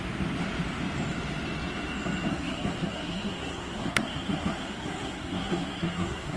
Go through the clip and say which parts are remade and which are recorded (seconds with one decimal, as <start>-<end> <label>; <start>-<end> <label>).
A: 0.0-2.3 recorded; 2.3-6.4 remade